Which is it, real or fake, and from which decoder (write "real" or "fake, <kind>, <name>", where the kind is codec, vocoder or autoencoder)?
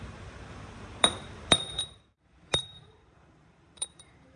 fake, vocoder, BigVGAN v2